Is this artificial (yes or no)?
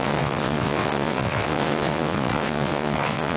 yes